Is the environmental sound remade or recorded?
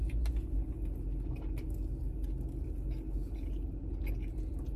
recorded